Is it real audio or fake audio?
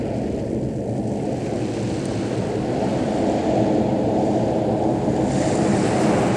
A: real